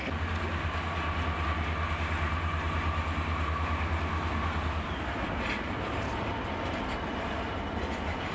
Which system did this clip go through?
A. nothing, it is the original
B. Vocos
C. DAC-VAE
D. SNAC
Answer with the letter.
A